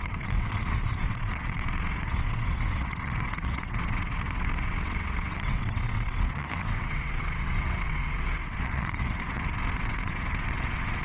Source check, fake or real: fake